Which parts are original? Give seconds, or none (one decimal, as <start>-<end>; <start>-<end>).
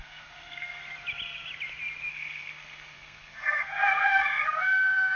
0.8-2.1